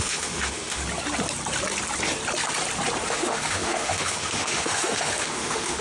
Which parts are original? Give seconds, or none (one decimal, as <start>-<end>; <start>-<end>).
0.8-3.1